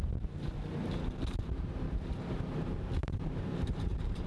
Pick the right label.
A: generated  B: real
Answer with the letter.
A